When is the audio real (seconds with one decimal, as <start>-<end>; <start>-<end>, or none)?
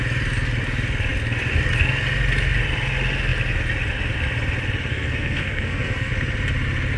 0.0-4.9; 6.1-7.0